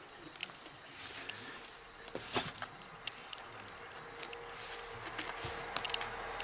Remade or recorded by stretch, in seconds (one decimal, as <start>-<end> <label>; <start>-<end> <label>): 0.0-6.4 recorded